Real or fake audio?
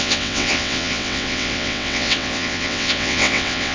fake